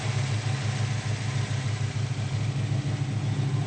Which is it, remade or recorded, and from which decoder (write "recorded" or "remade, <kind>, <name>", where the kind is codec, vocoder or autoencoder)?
recorded